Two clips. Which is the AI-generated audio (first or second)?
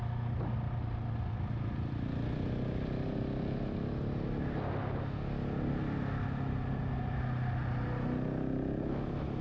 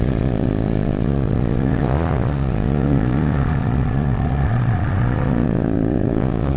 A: second